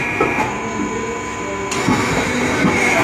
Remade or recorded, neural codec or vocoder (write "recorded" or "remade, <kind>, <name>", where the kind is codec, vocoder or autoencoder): recorded